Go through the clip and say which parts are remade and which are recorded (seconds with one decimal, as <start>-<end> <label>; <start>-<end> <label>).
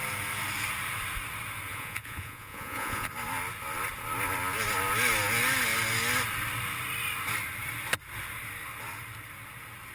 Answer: 0.0-1.7 recorded; 1.7-3.1 remade; 3.1-9.9 recorded